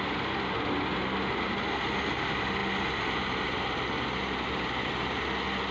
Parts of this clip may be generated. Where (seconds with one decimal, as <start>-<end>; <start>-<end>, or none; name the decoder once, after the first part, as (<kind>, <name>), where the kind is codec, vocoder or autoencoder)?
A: none